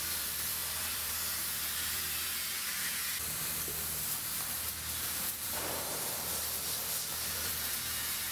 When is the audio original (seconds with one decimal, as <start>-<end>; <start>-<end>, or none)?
none